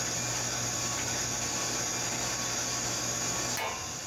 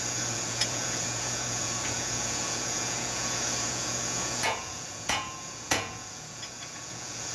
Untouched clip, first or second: first